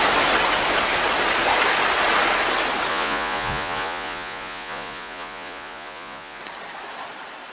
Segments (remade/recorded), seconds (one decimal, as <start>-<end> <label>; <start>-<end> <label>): 0.0-2.9 recorded; 2.9-6.4 remade; 6.4-7.5 recorded